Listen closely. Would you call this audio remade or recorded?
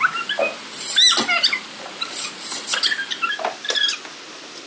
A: recorded